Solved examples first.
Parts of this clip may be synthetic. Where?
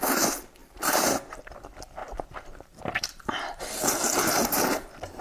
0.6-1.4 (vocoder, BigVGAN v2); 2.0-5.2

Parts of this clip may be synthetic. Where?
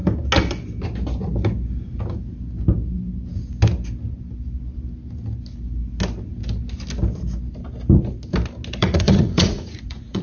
8.8-10.2 (vocoder, Vocos)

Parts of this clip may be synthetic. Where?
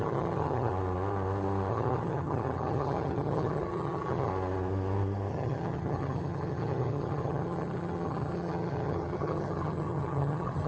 0.0-0.7 (vocoder, HiFi-GAN); 1.7-4.3; 5.3-10.7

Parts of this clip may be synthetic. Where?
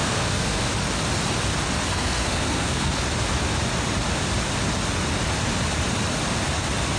0.0-0.7 (codec, SNAC); 1.9-2.9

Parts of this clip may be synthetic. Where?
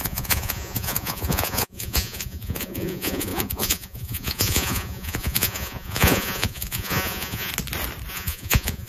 0.0-7.5 (vocoder, Vocos); 8.1-8.9